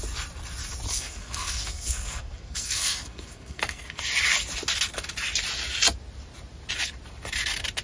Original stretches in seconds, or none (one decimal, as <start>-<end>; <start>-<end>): 0.0-0.9; 4.0-7.8